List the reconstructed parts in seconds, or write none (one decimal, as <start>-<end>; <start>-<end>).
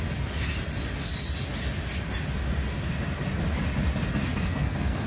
4.2-5.1